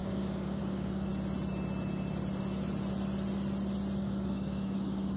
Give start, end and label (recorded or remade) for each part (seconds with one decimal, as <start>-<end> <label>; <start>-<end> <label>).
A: 0.0-1.1 remade; 1.1-4.0 recorded; 4.0-5.2 remade